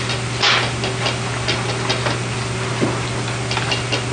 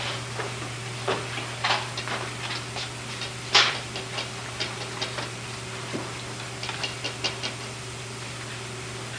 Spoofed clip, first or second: second